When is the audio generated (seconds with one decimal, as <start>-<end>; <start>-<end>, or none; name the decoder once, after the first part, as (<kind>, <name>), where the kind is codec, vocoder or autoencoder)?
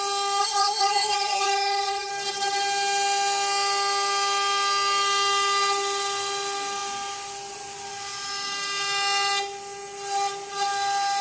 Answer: 0.4-2.1 (codec, SNAC)